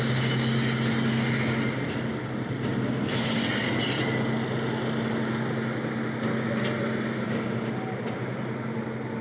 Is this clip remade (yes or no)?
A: no